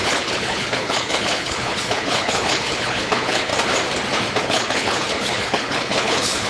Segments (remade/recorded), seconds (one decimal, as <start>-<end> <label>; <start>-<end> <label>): 0.0-3.5 remade; 3.5-4.4 recorded; 4.4-6.5 remade